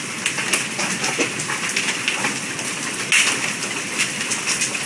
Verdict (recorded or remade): recorded